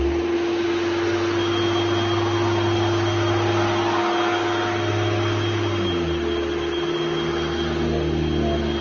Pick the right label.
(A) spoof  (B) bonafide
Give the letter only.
B